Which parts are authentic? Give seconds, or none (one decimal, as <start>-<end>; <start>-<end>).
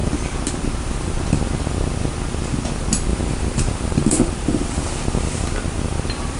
0.0-3.1; 4.9-6.4